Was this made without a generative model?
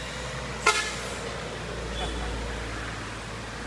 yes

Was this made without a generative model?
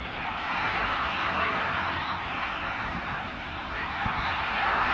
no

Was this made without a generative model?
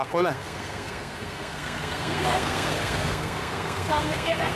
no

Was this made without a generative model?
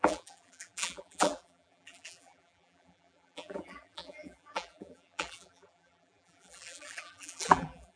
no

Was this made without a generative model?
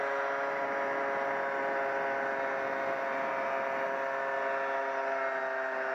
yes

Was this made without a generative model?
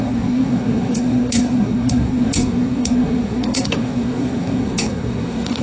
no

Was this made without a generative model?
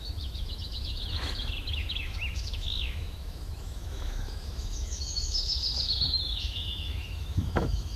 no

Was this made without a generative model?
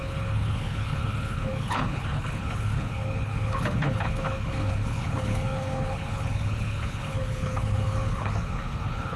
no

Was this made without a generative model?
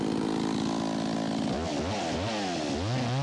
yes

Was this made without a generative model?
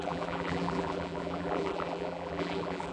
no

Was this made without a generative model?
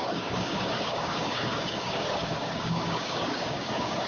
no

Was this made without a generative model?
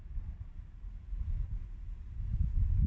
yes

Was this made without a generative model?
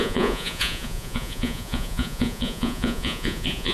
no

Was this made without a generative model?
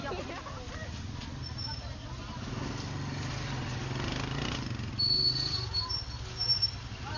yes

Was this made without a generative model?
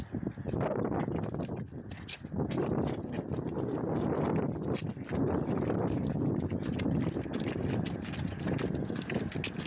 yes